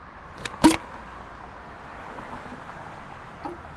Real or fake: real